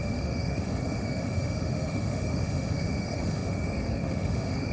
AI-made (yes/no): yes